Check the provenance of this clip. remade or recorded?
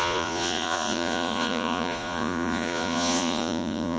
remade